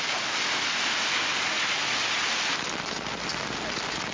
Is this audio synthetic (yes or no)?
no